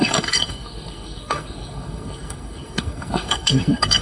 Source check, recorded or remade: remade